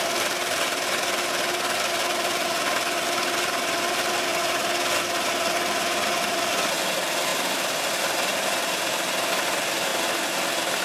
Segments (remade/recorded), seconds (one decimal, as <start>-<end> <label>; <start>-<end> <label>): 0.0-7.3 recorded; 7.3-8.9 remade; 8.9-10.8 recorded